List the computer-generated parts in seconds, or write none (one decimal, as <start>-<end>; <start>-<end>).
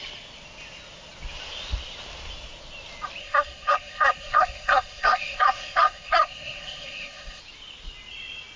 3.2-7.4